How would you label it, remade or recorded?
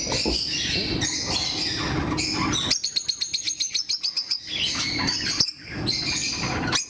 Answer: recorded